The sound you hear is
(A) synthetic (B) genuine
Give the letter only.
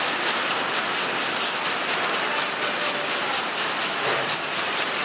B